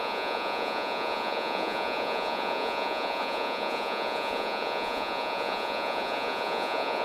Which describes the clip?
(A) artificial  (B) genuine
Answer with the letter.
A